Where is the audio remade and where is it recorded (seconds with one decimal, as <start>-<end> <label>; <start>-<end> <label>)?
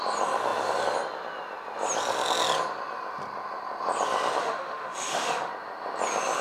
0.0-4.4 recorded; 4.4-5.5 remade; 5.5-6.4 recorded